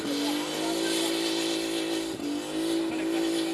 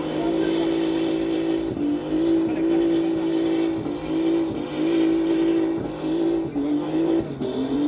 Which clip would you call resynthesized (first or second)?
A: second